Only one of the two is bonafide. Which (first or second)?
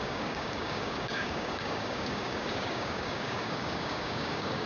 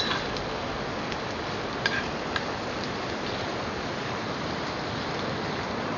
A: second